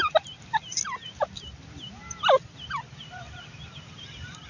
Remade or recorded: recorded